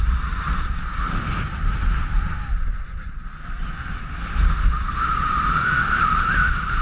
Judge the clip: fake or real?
real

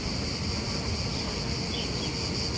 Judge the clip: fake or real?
real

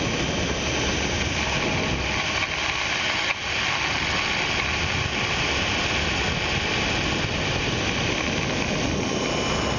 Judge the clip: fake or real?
real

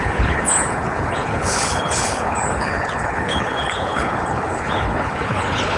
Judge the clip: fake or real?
fake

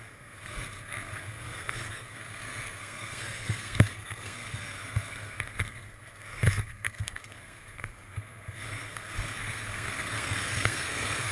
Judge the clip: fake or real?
fake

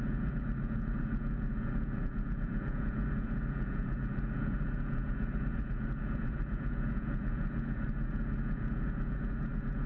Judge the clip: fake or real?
fake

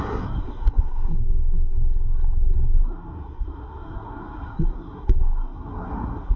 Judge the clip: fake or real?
fake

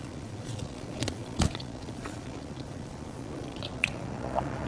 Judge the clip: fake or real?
fake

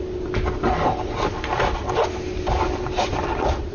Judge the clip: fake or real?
real